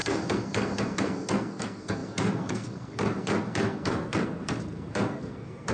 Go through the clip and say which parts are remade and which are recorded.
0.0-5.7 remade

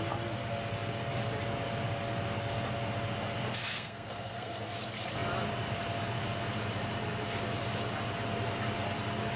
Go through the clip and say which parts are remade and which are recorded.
0.0-3.7 recorded; 3.7-4.6 remade; 4.6-9.4 recorded

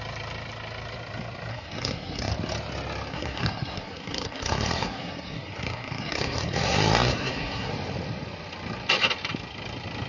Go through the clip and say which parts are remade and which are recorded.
0.0-1.5 recorded; 1.5-2.3 remade; 2.3-3.1 recorded; 3.1-7.7 remade; 7.7-10.1 recorded